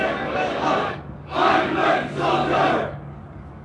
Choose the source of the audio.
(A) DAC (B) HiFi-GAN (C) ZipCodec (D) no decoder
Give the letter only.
A